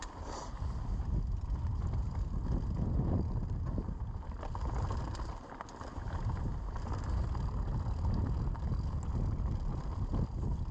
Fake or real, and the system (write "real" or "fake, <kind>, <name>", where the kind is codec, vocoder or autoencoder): real